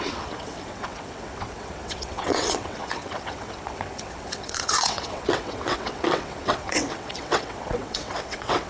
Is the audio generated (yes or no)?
yes